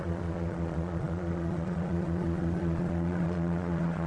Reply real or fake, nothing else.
fake